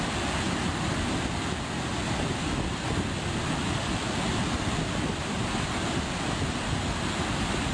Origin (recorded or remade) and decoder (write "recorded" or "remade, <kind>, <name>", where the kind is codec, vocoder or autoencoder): recorded